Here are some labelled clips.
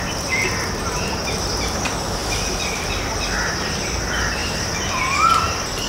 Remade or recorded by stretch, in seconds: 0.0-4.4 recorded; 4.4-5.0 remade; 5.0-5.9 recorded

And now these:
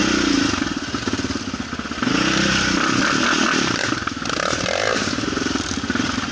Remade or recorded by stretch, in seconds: 0.0-3.8 recorded; 3.8-6.3 remade

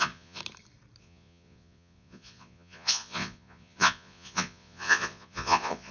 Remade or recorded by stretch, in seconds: 0.0-0.4 remade; 0.4-1.0 recorded; 1.0-5.9 remade

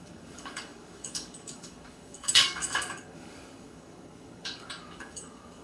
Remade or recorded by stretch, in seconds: 0.0-5.6 remade

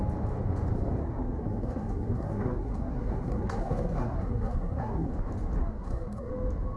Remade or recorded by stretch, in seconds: 0.0-1.0 recorded; 1.0-5.1 remade; 5.1-5.6 recorded; 5.6-6.3 remade; 6.3-6.8 recorded

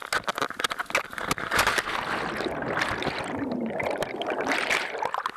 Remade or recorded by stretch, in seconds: 0.0-5.4 recorded

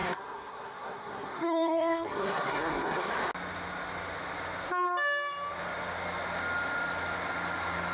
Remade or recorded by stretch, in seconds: 0.0-3.1 remade; 3.1-7.9 recorded